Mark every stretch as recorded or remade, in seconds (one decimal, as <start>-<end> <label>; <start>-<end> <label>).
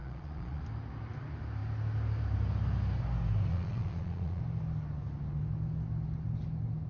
0.0-0.6 remade; 0.6-3.5 recorded; 3.5-4.4 remade; 4.4-6.9 recorded